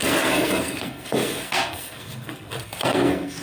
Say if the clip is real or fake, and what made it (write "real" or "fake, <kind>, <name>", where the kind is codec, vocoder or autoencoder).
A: fake, codec, SNAC